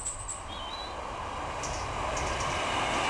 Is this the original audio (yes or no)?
yes